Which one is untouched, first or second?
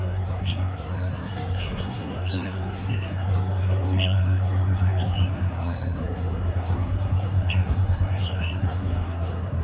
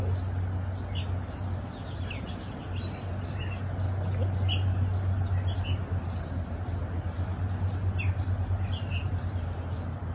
second